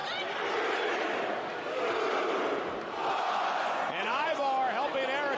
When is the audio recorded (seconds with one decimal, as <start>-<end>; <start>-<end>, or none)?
0.0-3.2; 4.4-5.4